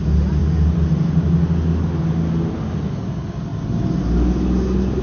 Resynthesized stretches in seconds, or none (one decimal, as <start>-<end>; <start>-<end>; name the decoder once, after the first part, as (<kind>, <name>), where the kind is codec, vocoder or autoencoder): none